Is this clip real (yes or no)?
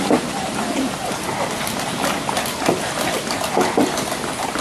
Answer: yes